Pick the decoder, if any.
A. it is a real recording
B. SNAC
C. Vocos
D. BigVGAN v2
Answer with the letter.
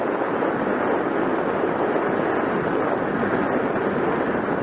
A